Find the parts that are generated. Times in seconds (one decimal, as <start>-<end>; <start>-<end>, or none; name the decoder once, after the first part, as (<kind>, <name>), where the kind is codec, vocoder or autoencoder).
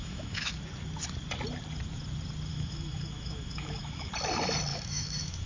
0.0-0.6 (autoencoder, DAC-VAE); 2.5-4.1; 4.7-5.5